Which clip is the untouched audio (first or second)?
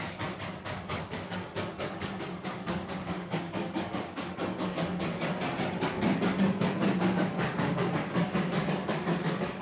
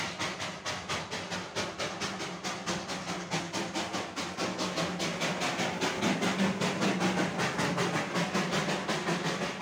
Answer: second